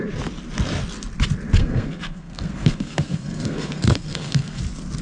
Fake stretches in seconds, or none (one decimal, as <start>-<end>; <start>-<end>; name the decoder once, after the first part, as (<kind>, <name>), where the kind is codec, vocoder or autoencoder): 1.6-4.6 (codec, SNAC)